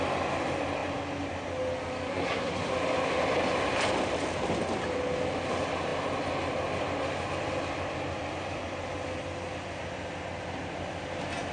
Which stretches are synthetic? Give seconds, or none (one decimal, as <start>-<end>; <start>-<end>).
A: 2.1-2.7